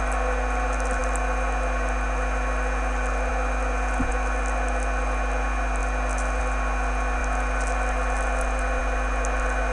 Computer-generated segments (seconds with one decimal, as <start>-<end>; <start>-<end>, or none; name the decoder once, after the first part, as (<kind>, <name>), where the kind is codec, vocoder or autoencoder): none